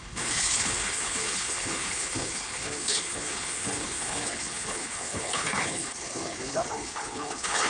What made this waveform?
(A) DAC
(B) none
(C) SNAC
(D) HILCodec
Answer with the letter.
D